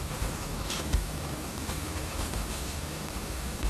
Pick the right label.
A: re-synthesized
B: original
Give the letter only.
A